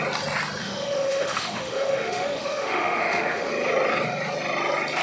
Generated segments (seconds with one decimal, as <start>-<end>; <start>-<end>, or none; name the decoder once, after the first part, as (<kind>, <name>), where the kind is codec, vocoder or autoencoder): 0.6-3.5 (autoencoder, DAC-VAE)